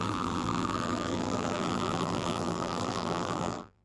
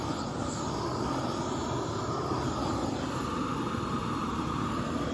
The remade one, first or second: first